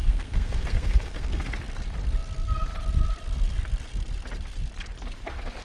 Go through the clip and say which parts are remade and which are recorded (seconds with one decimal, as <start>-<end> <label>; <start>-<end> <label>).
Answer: 0.0-1.5 remade; 1.5-5.6 recorded